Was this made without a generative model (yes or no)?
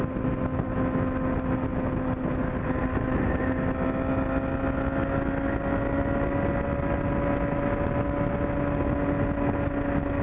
yes